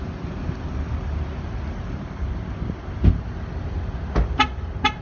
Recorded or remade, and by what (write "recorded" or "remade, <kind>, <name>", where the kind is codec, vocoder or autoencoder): recorded